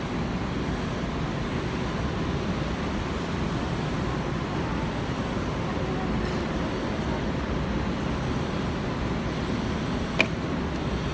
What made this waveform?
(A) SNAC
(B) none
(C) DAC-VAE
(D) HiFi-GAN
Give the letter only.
B